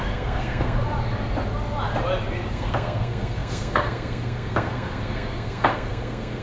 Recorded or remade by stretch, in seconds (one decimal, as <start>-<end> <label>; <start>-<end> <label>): 0.0-0.9 remade; 0.9-2.5 recorded; 2.5-6.4 remade